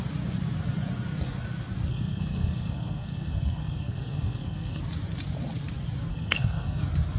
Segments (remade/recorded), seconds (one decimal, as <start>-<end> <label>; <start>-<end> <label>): 0.0-1.9 recorded; 1.9-4.8 remade; 4.8-6.1 recorded; 6.1-6.8 remade; 6.8-7.2 recorded